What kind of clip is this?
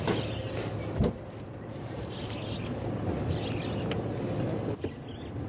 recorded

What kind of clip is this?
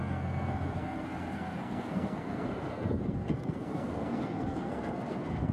remade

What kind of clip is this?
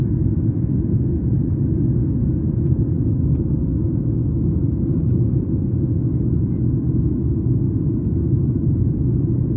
recorded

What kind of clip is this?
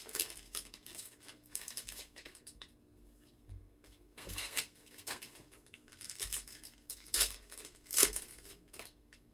remade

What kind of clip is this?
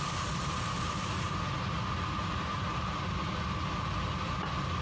recorded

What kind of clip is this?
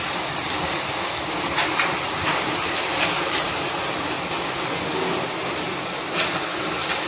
recorded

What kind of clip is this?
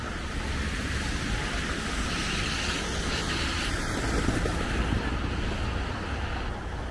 recorded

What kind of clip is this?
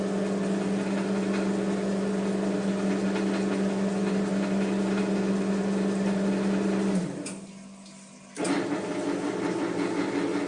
recorded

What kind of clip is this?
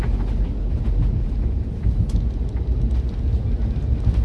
recorded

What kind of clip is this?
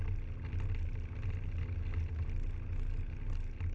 recorded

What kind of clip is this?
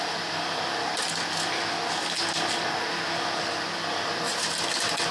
recorded